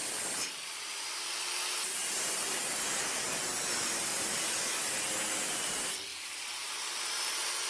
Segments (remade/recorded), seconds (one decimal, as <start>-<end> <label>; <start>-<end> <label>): 0.0-2.3 remade; 2.3-4.1 recorded; 4.1-4.8 remade; 4.8-6.1 recorded; 6.1-6.7 remade; 6.7-7.7 recorded